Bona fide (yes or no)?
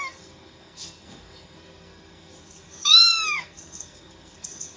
no